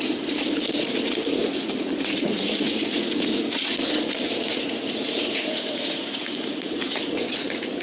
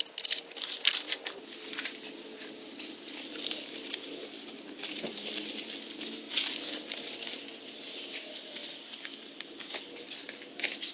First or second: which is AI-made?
first